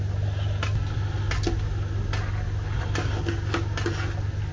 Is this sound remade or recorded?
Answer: recorded